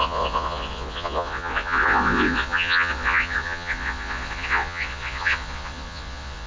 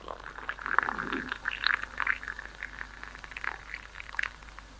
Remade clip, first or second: first